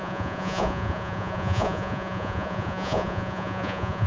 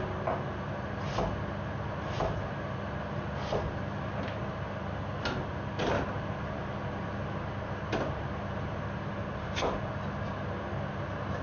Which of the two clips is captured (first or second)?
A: second